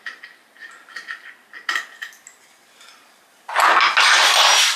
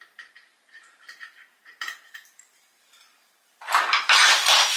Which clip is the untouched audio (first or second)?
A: first